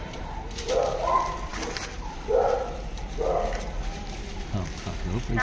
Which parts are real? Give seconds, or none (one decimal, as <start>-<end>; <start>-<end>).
0.0-5.4